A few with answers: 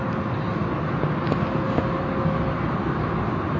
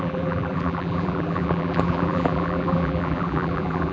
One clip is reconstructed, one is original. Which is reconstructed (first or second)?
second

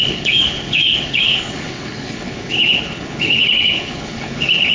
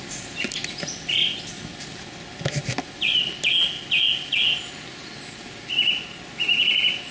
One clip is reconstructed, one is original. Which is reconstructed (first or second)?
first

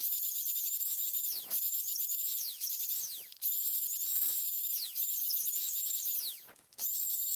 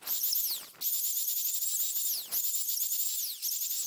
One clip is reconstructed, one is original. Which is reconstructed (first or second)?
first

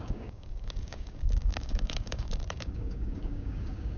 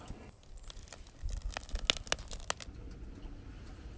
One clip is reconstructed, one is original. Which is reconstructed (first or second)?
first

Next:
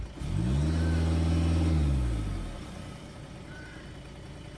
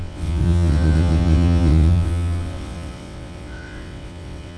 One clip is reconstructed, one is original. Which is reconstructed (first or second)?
second